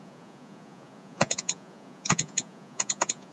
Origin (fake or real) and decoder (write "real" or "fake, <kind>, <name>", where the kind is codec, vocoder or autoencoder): fake, vocoder, Vocos